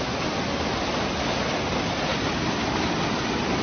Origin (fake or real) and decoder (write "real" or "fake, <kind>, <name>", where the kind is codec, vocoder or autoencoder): real